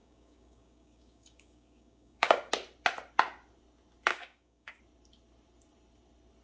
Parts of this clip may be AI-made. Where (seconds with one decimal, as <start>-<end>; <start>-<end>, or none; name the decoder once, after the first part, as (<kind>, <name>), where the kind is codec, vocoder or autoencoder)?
0.0-2.5 (codec, DAC); 4.1-4.8